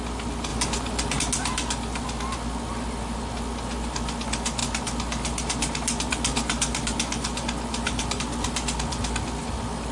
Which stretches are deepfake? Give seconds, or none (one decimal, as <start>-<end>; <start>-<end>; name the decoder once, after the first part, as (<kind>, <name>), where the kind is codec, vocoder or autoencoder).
none